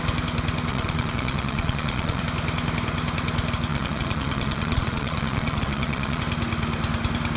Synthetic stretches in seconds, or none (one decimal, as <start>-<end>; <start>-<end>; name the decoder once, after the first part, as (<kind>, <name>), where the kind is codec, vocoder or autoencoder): 0.7-2.2 (vocoder, Vocos); 3.7-6.2